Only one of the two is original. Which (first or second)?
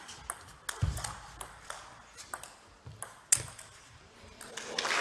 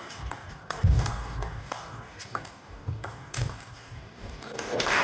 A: first